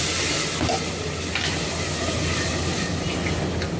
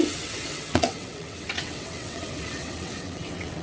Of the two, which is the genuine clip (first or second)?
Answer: first